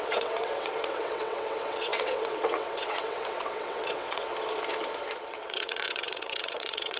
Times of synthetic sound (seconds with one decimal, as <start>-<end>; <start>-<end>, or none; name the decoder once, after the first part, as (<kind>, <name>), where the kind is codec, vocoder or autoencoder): 0.0-4.3 (vocoder, WaveNeXt); 5.3-7.0